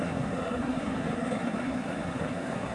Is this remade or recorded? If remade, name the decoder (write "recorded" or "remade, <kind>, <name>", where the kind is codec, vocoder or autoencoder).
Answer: remade, codec, SNAC